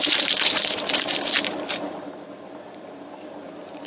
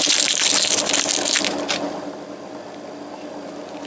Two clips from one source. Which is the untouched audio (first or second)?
second